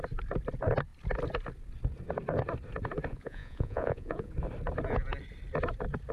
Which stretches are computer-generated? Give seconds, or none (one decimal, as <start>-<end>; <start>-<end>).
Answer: 3.1-4.3